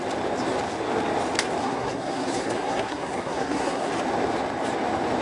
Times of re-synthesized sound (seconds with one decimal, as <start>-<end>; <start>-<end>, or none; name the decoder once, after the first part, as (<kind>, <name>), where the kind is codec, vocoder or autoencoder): 1.6-3.9 (codec, SNAC)